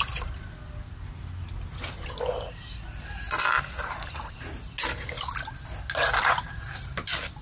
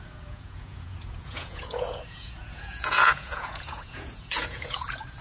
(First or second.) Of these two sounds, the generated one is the second